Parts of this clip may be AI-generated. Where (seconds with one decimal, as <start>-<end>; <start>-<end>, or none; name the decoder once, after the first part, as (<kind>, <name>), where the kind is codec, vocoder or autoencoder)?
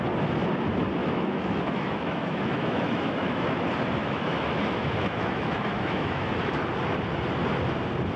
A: 1.0-3.6 (autoencoder, DAC-VAE); 4.0-6.5